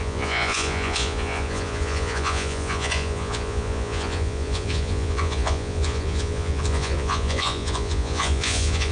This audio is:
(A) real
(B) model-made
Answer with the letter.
B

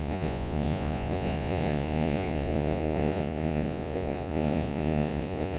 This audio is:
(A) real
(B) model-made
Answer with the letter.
B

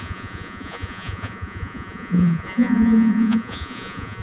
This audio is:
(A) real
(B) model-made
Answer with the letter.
B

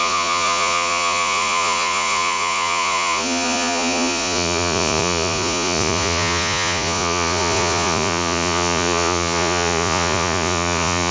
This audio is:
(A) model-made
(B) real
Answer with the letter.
A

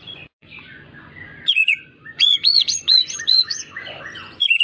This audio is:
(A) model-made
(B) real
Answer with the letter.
A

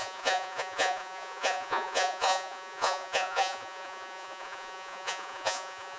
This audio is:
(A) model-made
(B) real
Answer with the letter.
A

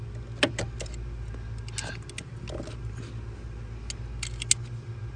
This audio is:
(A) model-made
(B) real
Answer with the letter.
B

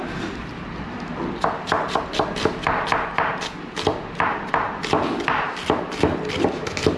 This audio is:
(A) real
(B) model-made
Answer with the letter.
A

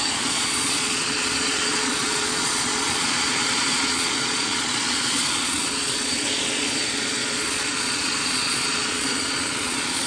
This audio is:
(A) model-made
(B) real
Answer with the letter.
A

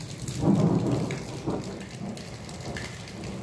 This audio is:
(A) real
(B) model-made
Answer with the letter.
A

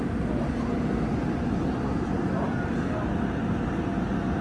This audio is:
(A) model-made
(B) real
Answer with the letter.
B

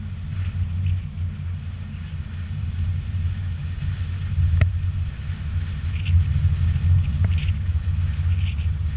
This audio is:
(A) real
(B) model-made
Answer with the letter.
A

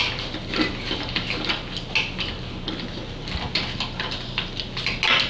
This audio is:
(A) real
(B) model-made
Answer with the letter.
A